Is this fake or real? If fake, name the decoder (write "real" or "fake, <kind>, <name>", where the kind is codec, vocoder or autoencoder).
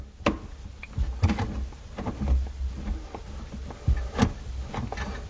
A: real